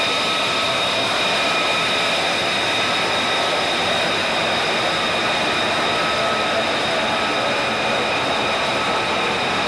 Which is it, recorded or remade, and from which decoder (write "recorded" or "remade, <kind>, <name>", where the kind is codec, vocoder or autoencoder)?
recorded